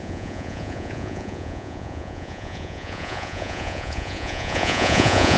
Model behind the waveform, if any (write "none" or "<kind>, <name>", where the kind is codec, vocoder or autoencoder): vocoder, Vocos